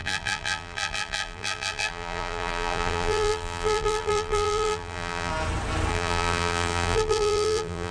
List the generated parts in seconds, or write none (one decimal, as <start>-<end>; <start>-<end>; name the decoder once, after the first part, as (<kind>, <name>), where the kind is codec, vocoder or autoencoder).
0.0-5.3 (vocoder, BigVGAN v2); 5.9-7.9